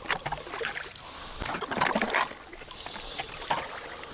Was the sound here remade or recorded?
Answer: recorded